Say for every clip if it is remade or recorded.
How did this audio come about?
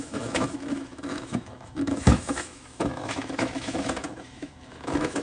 remade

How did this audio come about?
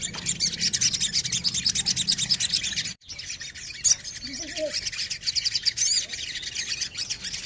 recorded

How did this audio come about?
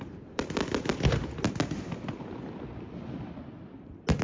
recorded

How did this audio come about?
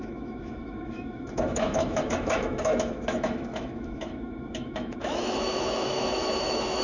remade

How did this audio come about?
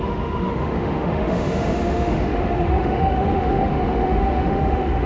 remade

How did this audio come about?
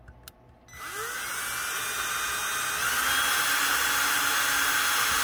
recorded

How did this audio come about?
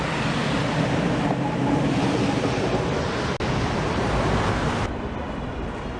recorded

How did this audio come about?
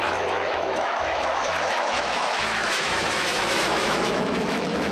remade